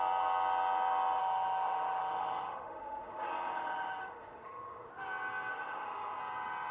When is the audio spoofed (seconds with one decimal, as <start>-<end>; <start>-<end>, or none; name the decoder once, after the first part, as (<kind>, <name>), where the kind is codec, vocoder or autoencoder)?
1.2-4.9 (autoencoder, DAC-VAE); 5.5-6.2